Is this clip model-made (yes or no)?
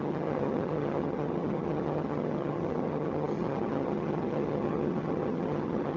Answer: yes